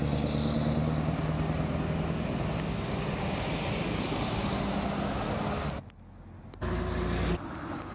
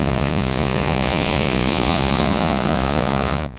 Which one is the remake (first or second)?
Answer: second